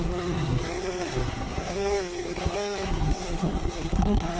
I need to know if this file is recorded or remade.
remade